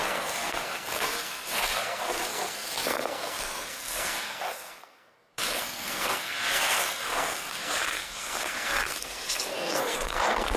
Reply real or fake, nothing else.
fake